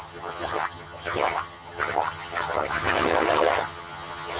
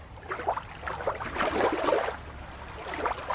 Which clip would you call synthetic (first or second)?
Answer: first